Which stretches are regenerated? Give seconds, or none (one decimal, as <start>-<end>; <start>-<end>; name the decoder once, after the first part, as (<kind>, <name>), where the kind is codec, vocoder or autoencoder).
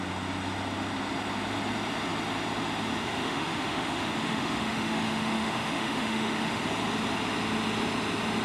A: 3.0-6.6 (autoencoder, DAC-VAE)